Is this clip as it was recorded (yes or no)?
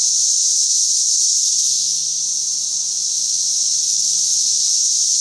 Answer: yes